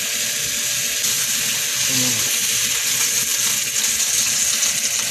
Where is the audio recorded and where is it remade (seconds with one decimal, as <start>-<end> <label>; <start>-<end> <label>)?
0.0-5.1 recorded